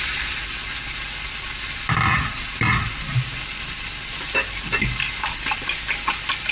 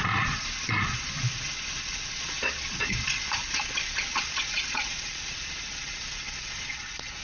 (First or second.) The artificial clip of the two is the second